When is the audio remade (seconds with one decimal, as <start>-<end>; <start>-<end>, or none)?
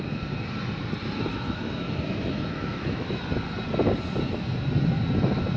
1.3-3.2